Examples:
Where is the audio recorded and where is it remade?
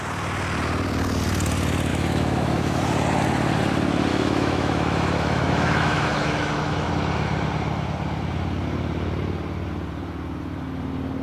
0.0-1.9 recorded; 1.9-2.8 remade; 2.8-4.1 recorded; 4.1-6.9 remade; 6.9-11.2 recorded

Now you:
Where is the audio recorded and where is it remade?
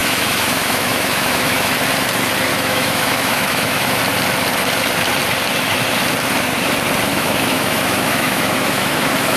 0.0-1.7 remade; 1.7-2.5 recorded; 2.5-4.0 remade; 4.0-7.1 recorded; 7.1-9.4 remade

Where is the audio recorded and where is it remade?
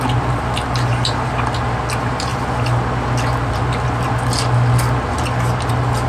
0.0-6.1 recorded